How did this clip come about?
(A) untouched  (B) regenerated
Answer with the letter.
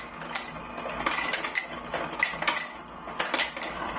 A